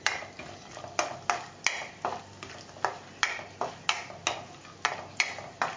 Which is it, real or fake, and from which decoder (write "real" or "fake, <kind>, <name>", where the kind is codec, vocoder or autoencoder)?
real